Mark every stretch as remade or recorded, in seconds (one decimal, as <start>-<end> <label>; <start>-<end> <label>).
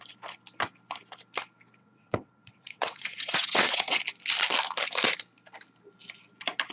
0.0-1.8 recorded; 1.8-4.0 remade; 4.0-6.7 recorded